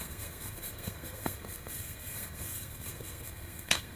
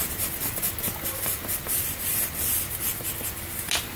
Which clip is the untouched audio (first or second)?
second